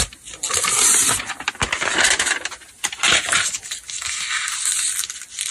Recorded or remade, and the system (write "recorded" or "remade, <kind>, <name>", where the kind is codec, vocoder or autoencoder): recorded